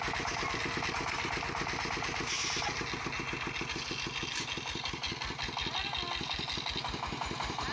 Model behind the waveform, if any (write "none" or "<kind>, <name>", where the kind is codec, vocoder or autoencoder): none